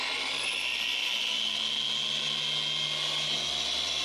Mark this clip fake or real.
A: real